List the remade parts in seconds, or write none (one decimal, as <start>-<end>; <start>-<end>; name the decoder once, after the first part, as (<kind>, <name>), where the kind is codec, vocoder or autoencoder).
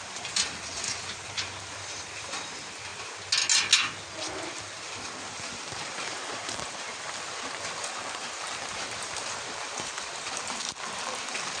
0.0-2.9 (vocoder, BigVGAN v2); 4.6-11.6